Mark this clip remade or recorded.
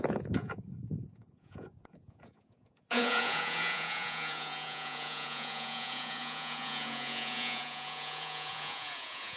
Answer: remade